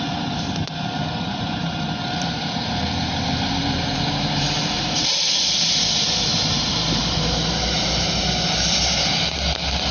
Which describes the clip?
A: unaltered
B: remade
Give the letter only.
B